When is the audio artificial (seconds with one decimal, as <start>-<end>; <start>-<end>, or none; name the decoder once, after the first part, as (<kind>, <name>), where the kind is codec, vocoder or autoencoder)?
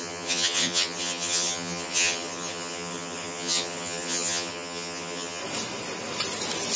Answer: 0.0-5.4 (vocoder, HiFi-GAN)